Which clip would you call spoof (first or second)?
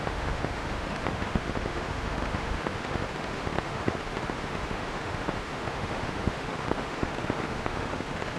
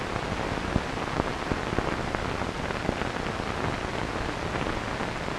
first